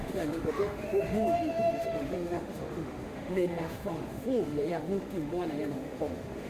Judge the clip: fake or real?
fake